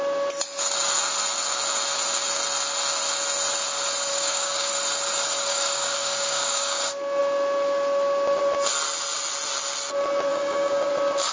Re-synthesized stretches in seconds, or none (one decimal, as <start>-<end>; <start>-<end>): 4.1-4.7; 5.5-6.8; 10.3-10.9